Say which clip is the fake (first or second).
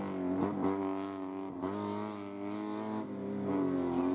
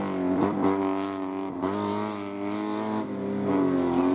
second